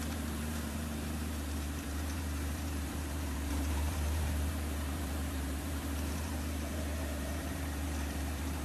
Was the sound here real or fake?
fake